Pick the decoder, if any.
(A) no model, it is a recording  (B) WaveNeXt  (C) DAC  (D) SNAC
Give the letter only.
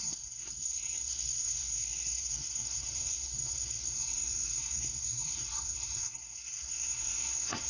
D